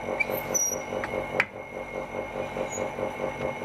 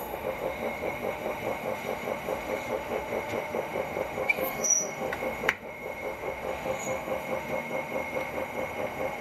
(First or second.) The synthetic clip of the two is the second